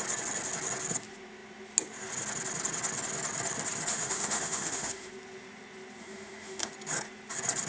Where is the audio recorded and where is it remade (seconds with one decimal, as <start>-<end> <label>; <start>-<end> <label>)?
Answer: 0.0-3.9 recorded; 3.9-5.1 remade; 5.1-6.0 recorded; 6.0-6.7 remade; 6.7-7.7 recorded